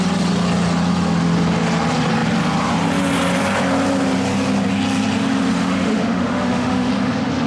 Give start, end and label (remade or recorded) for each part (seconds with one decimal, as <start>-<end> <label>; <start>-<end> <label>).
0.0-5.6 recorded; 5.6-6.9 remade; 6.9-7.5 recorded